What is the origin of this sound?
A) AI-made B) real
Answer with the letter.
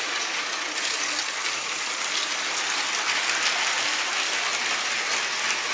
B